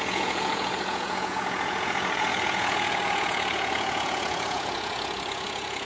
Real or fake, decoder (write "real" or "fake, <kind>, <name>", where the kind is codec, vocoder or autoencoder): fake, vocoder, Vocos